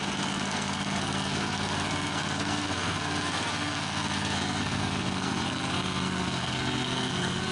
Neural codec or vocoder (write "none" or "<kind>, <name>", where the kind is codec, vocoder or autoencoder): codec, SNAC